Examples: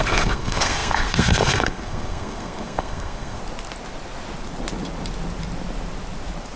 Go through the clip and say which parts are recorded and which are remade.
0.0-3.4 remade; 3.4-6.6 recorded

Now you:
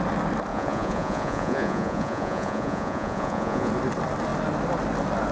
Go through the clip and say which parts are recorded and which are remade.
0.0-0.5 recorded; 0.5-3.7 remade; 3.7-5.3 recorded

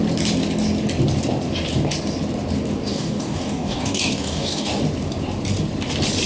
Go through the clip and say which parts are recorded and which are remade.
0.0-2.9 recorded; 2.9-4.8 remade; 4.8-6.3 recorded

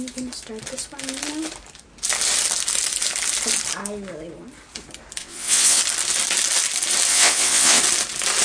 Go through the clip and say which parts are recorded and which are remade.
0.0-5.2 recorded; 5.2-5.8 remade; 5.8-7.1 recorded; 7.1-7.8 remade; 7.8-8.4 recorded

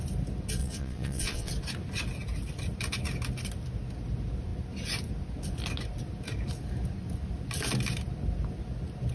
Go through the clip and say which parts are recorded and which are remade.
0.0-0.6 recorded; 0.6-1.5 remade; 1.5-9.1 recorded

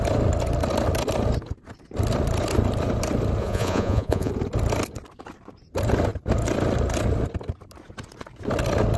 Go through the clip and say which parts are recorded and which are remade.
0.0-3.4 recorded; 3.4-4.3 remade; 4.3-9.0 recorded